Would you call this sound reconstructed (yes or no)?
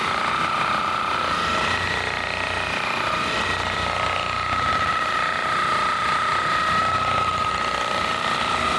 no